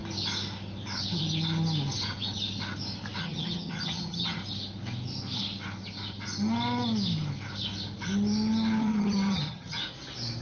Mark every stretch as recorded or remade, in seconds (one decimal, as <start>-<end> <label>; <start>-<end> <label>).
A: 0.0-3.2 recorded; 3.2-4.4 remade; 4.4-8.8 recorded; 8.8-9.8 remade; 9.8-10.4 recorded